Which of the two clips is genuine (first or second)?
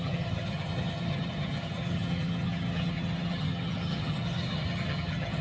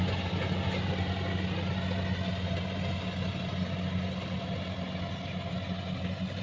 second